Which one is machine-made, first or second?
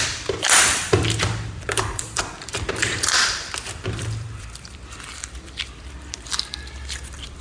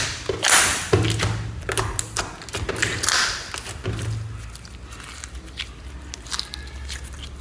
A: first